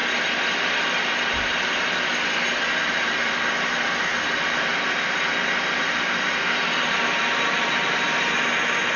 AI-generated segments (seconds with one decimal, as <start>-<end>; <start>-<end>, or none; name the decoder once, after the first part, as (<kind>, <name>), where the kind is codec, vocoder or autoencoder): none